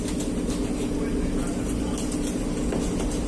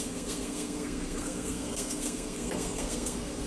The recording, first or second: first